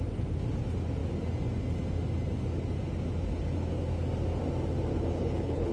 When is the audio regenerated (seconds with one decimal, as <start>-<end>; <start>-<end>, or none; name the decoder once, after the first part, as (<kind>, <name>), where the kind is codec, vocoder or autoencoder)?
4.9-5.7 (codec, HILCodec)